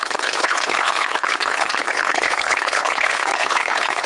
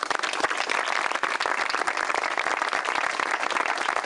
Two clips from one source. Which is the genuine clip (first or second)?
second